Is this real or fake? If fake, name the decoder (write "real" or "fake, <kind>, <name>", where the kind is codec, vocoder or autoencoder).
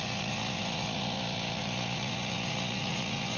fake, vocoder, Vocos